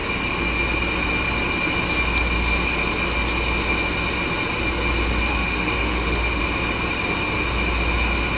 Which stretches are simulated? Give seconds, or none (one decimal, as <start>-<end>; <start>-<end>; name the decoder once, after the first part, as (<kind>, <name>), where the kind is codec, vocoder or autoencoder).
5.3-6.4 (autoencoder, DAC-VAE)